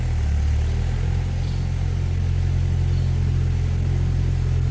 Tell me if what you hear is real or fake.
real